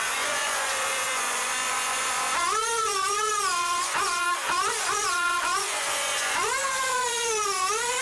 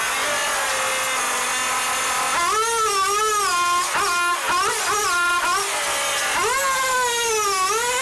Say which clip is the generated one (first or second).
first